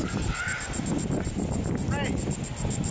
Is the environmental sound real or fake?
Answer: real